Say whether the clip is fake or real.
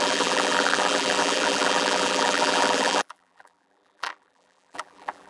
fake